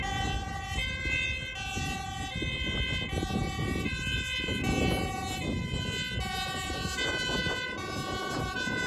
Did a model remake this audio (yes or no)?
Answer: no